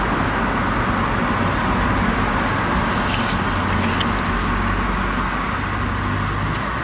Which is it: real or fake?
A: real